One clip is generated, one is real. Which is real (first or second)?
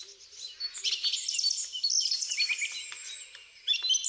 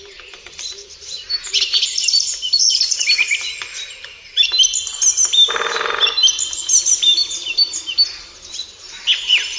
first